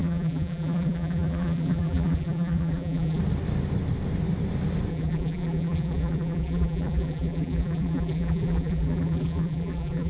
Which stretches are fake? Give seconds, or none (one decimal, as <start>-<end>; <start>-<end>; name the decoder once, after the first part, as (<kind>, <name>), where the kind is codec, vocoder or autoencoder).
0.0-3.2 (vocoder, BigVGAN v2); 4.9-10.1